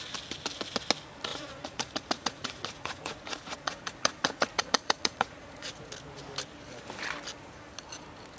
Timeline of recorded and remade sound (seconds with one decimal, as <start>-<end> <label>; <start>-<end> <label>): 0.0-1.3 recorded; 1.3-5.9 remade; 5.9-8.4 recorded